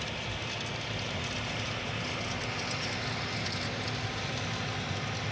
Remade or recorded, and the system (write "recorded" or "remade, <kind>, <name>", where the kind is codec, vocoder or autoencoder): recorded